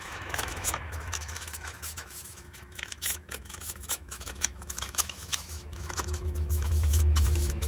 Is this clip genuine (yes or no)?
no